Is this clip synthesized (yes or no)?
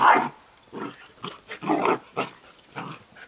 no